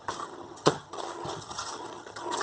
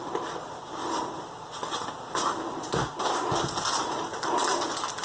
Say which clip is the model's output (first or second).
first